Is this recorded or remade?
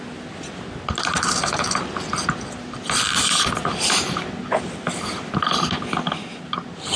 recorded